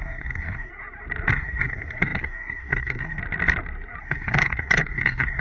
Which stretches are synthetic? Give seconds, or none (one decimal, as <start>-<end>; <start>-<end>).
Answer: 0.0-0.7; 1.3-3.2; 4.0-5.4